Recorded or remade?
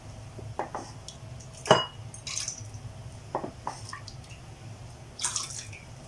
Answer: recorded